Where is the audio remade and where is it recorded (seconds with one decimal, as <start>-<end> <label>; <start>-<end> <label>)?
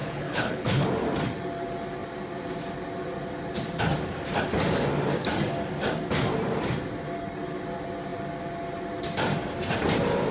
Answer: 0.0-0.9 remade; 0.9-10.3 recorded